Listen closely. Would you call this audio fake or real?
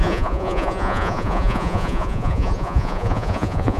fake